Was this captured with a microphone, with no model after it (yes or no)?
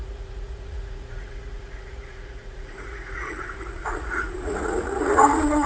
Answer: no